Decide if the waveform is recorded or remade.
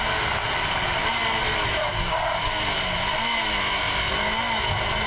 recorded